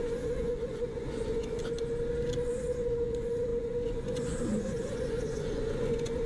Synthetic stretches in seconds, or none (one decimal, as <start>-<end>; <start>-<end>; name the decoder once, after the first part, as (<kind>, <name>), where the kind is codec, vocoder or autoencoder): 0.0-1.6 (vocoder, Vocos); 2.5-6.3